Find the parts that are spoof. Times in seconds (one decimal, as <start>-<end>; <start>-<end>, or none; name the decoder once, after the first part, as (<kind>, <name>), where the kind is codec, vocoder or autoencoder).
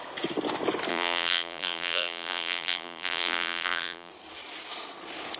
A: 0.9-4.1 (vocoder, BigVGAN v2)